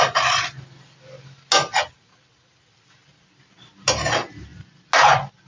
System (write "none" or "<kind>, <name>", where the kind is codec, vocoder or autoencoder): none